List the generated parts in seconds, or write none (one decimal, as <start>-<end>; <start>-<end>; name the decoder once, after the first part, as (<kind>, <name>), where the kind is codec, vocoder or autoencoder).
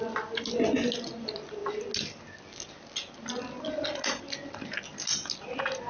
none